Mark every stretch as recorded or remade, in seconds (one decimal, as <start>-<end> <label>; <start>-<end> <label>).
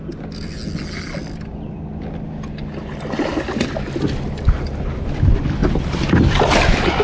0.0-7.0 recorded